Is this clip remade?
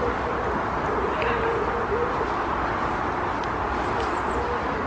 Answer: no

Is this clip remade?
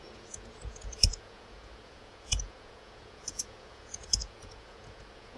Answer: yes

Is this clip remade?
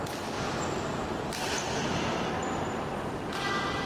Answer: no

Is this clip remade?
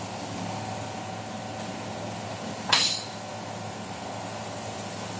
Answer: no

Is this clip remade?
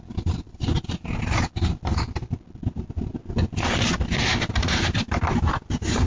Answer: no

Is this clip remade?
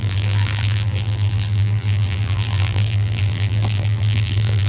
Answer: yes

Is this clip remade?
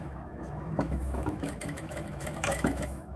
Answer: yes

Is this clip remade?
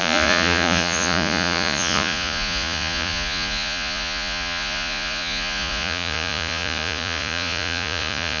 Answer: yes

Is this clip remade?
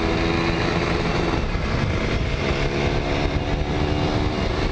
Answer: no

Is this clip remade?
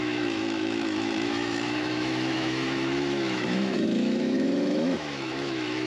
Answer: yes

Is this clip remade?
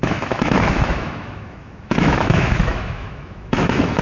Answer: yes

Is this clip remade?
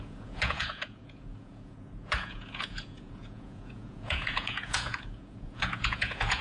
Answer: yes